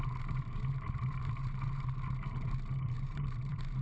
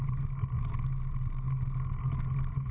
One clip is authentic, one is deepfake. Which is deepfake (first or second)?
first